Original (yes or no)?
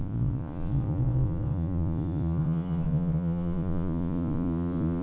no